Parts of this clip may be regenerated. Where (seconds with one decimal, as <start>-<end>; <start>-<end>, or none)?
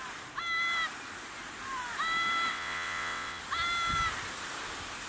2.5-3.4